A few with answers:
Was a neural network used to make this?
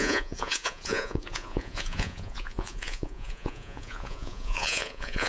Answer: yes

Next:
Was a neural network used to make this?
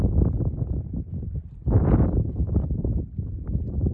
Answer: no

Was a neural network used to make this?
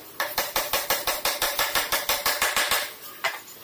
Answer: yes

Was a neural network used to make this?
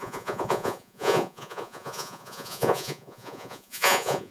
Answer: yes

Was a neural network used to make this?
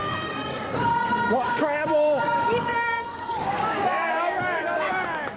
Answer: yes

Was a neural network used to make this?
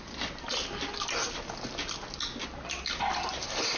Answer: no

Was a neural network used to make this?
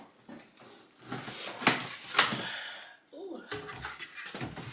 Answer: no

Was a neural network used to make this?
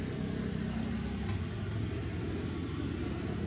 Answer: no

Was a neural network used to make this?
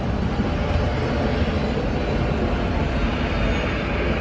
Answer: no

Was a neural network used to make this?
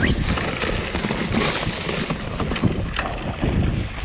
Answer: no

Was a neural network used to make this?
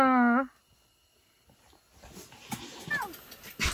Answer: no